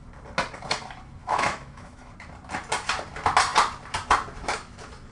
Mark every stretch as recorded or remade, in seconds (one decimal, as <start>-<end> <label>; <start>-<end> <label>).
0.0-1.2 recorded; 1.2-2.1 remade; 2.1-5.1 recorded